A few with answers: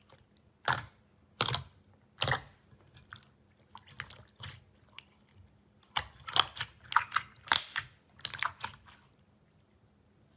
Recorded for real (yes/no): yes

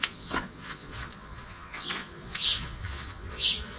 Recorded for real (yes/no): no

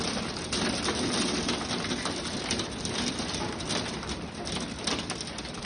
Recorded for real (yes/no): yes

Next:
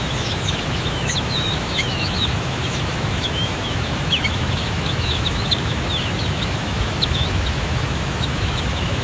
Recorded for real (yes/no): no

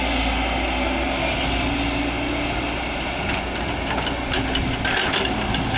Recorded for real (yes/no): yes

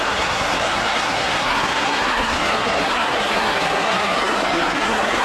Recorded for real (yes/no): no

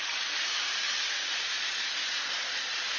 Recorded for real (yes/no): yes